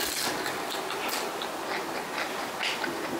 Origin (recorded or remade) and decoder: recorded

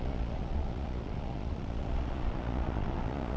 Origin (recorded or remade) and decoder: remade, vocoder, Vocos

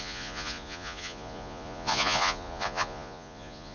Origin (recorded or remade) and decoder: remade, vocoder, Vocos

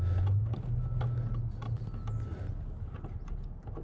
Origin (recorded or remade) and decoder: recorded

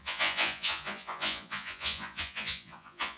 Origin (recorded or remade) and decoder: remade, vocoder, Vocos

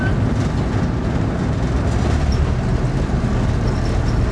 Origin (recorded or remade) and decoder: recorded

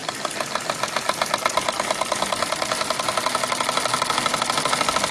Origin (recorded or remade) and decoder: recorded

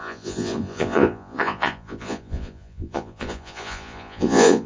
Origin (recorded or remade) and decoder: remade, vocoder, Vocos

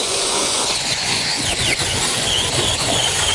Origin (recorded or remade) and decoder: remade, vocoder, Vocos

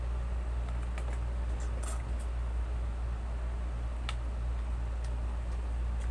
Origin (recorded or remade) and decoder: recorded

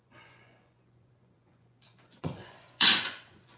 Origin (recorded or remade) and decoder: remade, vocoder, Vocos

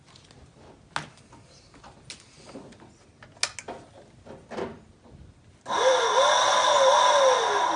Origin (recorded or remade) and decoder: recorded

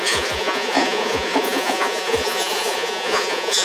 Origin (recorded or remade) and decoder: remade, vocoder, Vocos